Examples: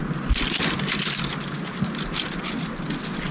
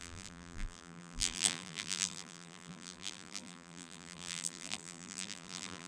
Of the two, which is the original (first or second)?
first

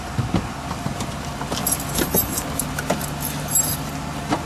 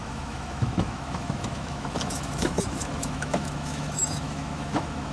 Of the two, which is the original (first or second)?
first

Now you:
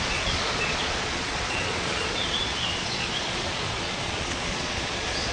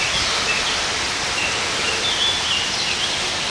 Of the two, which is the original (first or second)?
second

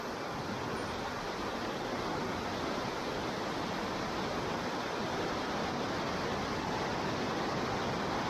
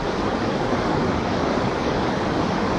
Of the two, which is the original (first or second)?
first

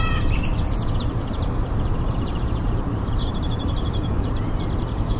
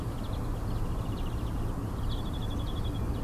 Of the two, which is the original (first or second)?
second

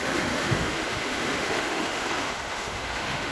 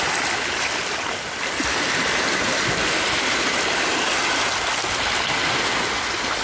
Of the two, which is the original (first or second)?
second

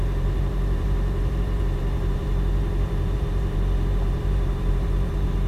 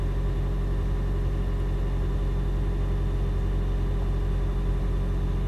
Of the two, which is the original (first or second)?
second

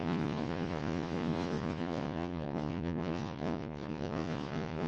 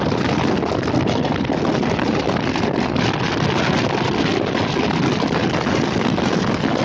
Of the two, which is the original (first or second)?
second